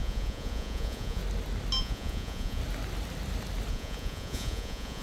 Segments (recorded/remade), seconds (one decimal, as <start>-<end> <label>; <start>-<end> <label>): 0.0-1.2 remade; 1.2-1.8 recorded; 1.8-2.6 remade; 2.6-3.7 recorded; 3.7-5.0 remade